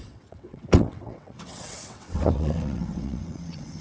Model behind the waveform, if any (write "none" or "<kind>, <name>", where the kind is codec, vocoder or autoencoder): vocoder, WaveNeXt